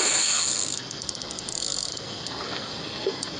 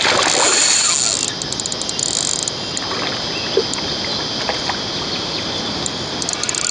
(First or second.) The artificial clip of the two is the first